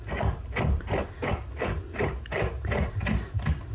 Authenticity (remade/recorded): recorded